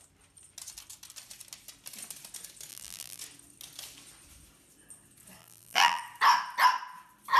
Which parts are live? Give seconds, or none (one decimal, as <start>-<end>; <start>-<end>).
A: 0.0-2.7; 3.2-5.4; 6.0-7.4